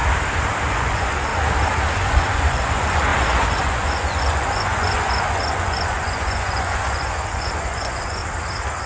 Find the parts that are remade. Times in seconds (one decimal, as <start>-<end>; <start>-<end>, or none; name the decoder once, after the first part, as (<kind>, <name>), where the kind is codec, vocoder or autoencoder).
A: 0.7-1.3 (vocoder, Vocos); 1.9-8.2